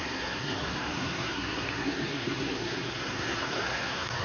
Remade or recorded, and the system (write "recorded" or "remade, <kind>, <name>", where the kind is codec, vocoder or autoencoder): remade, codec, SNAC